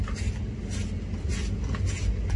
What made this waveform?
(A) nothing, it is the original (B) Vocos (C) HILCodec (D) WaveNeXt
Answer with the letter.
A